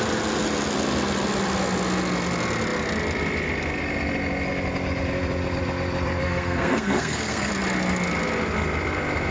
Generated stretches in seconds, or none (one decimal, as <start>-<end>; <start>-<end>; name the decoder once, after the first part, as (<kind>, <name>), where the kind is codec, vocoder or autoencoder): 6.2-7.5 (codec, SNAC)

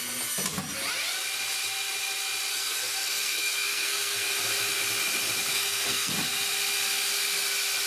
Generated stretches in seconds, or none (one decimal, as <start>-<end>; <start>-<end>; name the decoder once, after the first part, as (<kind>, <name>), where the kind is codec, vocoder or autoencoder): 2.5-4.3 (codec, SNAC); 5.5-6.1

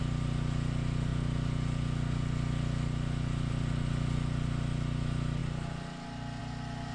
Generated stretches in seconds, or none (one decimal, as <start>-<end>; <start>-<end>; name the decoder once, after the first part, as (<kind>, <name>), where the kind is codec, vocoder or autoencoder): none